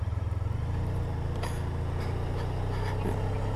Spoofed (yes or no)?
no